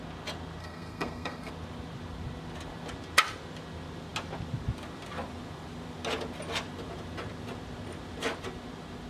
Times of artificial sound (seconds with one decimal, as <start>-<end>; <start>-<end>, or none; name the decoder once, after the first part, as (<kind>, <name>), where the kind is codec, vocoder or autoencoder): 0.6-1.5 (codec, SNAC)